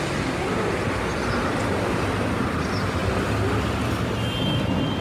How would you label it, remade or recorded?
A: recorded